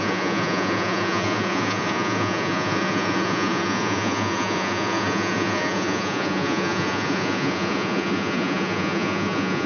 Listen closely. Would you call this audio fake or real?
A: fake